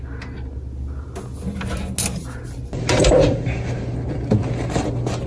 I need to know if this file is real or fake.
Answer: real